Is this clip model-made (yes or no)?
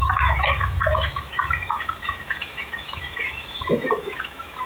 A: yes